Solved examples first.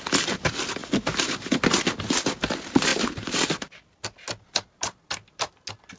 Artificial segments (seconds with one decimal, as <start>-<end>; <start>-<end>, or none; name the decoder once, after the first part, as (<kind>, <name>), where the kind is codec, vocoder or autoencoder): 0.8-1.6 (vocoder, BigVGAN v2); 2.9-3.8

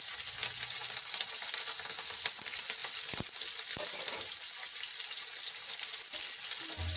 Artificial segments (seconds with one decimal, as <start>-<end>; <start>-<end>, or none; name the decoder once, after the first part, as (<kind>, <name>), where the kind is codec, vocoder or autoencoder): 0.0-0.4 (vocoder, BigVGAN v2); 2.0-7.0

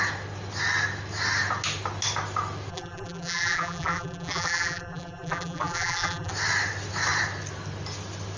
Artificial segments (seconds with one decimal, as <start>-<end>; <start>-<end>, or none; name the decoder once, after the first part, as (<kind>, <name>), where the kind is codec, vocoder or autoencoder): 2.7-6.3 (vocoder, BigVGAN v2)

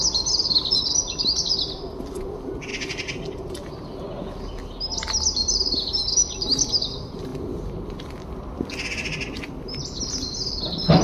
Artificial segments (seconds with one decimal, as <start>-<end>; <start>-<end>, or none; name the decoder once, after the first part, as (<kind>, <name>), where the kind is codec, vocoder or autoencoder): none

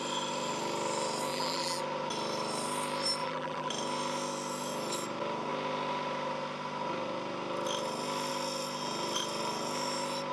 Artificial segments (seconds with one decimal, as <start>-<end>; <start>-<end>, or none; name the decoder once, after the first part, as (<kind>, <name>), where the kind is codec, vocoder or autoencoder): 1.3-1.8 (vocoder, BigVGAN v2); 3.2-3.7

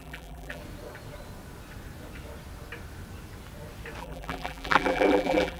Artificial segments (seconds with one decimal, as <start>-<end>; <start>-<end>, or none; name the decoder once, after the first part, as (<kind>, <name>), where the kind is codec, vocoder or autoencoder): 0.0-0.6 (vocoder, BigVGAN v2); 4.0-5.6